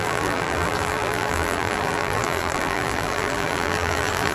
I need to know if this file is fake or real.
fake